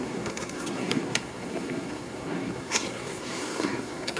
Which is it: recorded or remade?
remade